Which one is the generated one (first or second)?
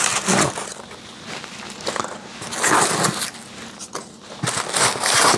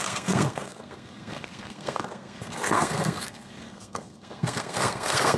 second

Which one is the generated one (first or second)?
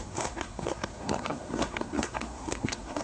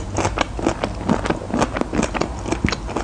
first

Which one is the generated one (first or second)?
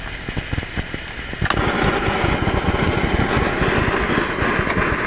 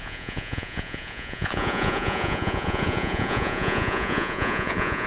second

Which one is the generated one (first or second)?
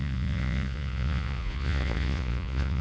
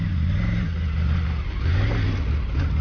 first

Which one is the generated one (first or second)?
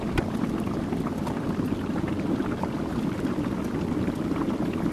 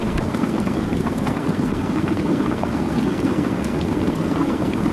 second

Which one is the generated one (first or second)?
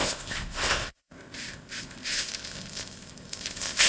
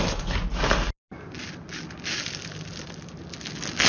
first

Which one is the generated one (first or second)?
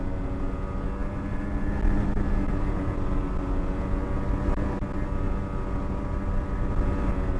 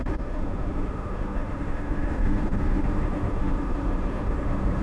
second